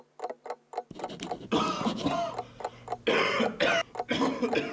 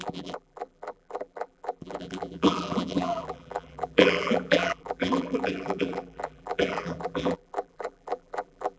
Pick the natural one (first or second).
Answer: first